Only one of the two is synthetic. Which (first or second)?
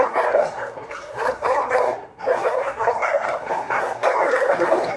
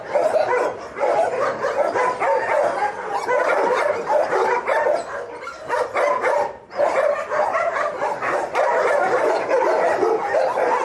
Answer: first